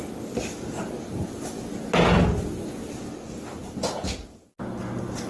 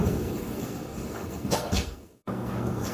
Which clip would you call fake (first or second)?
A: second